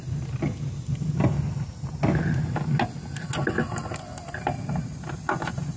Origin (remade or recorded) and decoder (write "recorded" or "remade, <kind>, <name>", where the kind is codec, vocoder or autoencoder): recorded